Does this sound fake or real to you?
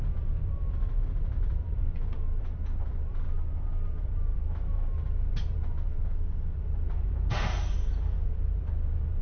fake